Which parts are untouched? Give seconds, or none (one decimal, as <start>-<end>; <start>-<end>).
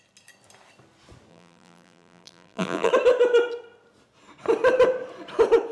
0.0-1.3; 2.9-5.7